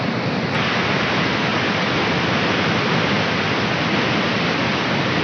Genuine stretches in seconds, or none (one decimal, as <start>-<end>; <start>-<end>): 0.0-5.2